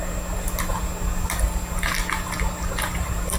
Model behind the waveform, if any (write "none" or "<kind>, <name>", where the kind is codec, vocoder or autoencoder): none